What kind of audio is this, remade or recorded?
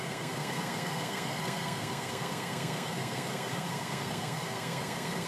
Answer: remade